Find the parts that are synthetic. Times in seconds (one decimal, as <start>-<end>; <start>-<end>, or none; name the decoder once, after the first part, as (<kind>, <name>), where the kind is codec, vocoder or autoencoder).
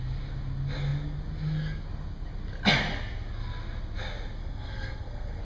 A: 4.4-5.4 (codec, SNAC)